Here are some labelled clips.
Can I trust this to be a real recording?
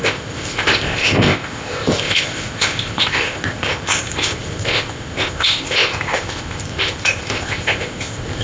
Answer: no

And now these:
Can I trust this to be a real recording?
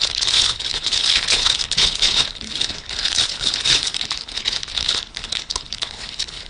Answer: no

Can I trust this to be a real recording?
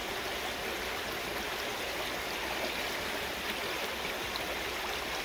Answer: yes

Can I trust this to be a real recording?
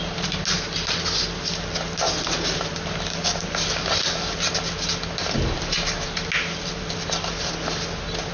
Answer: yes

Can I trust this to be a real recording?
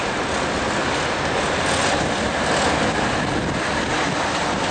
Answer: yes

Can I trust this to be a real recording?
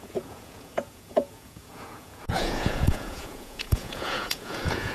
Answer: no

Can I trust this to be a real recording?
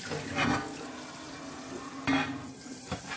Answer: yes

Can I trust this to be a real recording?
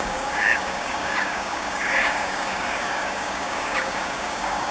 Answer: no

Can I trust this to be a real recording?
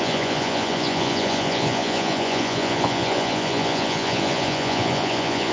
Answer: no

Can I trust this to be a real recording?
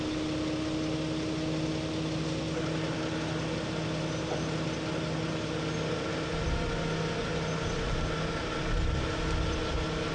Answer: yes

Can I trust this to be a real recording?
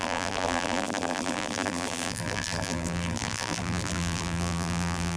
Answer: no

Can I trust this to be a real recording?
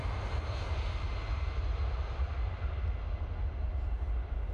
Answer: yes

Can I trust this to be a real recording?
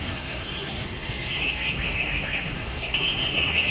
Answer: no